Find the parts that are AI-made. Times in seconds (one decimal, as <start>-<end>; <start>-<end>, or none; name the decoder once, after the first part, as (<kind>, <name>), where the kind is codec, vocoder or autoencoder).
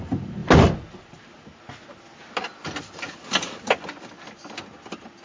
none